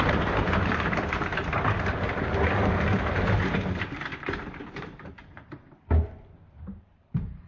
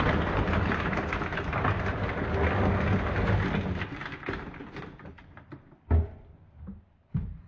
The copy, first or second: first